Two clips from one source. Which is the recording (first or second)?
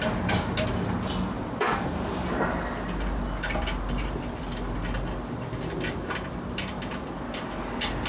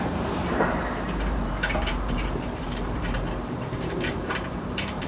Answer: first